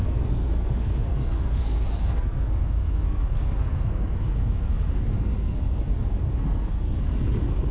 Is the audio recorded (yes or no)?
no